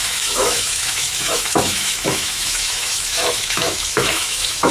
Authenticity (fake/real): fake